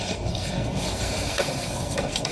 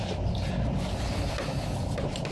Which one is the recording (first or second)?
second